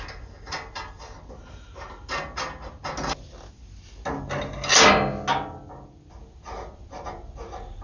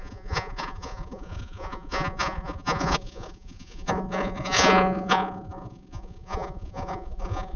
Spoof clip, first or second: second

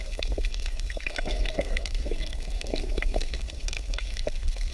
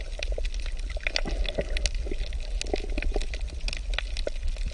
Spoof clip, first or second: first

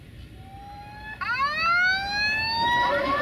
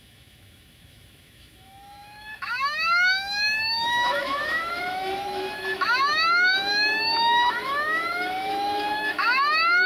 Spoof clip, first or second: second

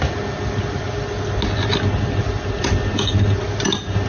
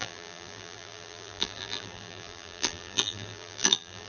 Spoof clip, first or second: second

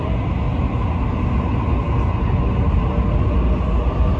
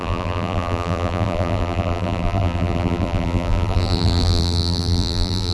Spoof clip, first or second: second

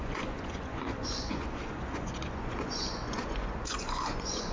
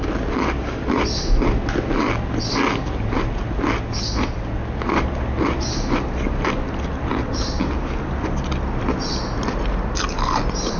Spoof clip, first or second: first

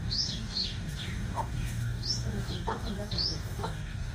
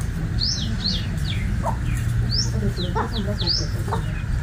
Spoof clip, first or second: first